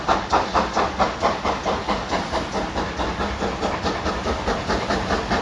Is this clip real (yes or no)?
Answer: yes